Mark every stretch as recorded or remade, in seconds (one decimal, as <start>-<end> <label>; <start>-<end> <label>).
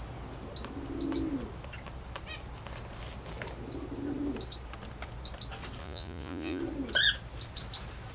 0.0-5.8 recorded; 5.8-6.6 remade; 6.6-8.1 recorded